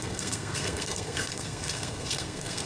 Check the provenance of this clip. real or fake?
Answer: fake